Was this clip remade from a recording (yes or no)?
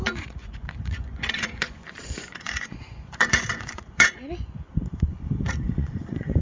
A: yes